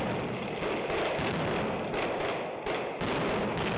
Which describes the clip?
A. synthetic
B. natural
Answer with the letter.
B